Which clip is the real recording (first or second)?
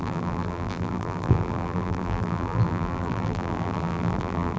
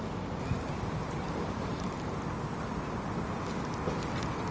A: second